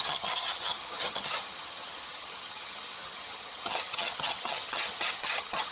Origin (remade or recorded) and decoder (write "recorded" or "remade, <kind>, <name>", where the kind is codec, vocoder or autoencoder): remade, vocoder, HiFi-GAN